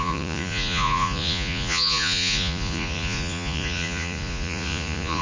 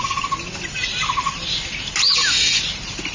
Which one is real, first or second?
second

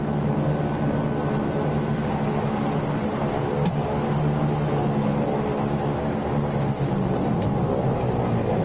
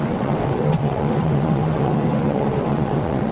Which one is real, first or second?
first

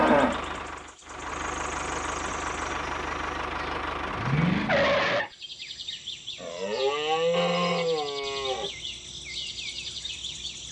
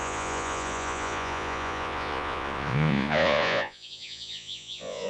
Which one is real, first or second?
first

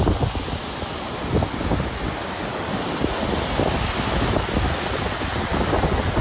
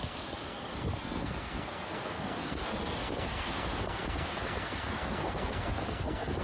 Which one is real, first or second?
first